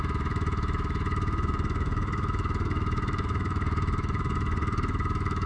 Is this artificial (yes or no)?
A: yes